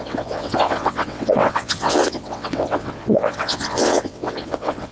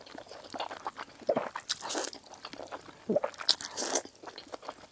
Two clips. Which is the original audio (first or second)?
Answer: second